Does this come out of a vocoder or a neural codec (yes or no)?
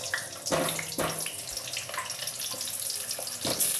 no